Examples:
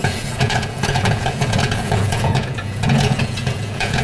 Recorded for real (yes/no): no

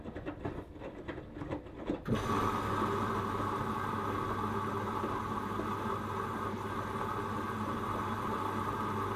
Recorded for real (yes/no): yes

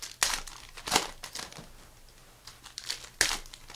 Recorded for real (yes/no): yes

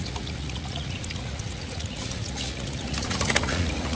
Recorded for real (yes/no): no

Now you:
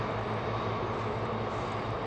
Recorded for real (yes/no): yes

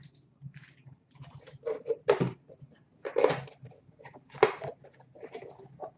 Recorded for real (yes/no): no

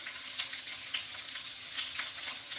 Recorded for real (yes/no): no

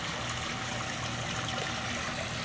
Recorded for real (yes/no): yes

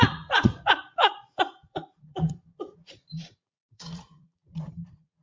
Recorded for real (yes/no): no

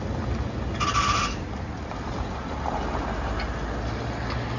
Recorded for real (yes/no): yes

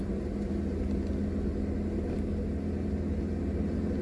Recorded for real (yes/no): yes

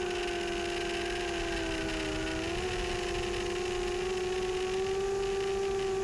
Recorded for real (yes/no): yes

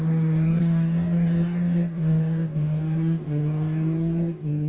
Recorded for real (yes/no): no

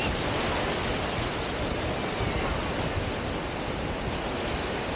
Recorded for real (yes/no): yes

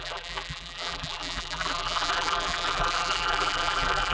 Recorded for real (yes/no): no